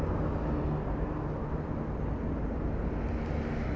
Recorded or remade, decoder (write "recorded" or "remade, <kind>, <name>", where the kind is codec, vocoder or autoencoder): recorded